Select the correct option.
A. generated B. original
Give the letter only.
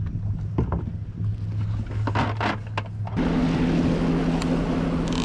B